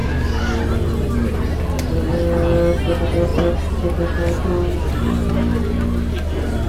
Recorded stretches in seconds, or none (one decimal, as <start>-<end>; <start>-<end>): 0.6-6.7